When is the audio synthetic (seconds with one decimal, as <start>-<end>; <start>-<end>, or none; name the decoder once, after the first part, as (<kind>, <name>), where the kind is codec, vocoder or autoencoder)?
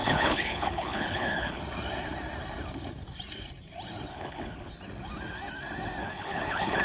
0.0-1.6 (codec, HILCodec); 4.1-4.7; 6.0-6.8